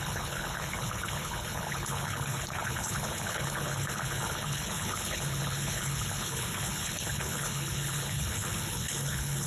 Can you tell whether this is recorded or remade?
remade